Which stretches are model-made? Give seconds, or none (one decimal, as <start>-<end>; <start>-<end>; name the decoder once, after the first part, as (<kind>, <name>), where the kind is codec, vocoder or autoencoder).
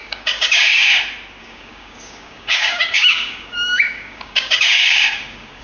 0.0-0.9 (codec, DAC); 1.4-5.6